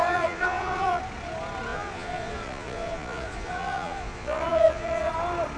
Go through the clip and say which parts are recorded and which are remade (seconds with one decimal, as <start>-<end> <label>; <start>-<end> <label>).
0.0-1.0 remade; 1.0-1.7 recorded; 1.7-5.1 remade; 5.1-5.6 recorded